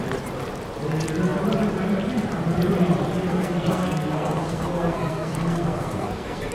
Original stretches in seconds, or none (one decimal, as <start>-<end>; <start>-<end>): 0.0-3.3

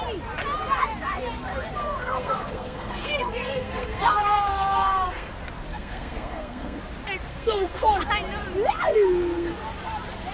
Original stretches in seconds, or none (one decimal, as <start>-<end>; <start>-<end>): 0.0-1.8; 5.3-5.7; 6.8-7.3; 8.0-8.9; 9.5-10.3

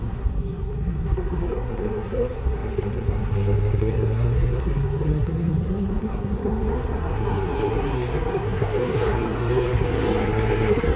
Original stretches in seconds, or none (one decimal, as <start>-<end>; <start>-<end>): none

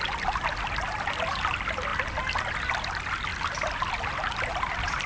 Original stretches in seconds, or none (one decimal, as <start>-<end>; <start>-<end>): 0.0-5.1

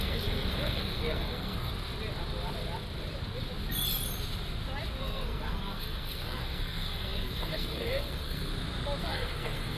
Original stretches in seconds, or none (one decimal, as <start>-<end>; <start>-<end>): 1.7-5.0; 8.5-9.0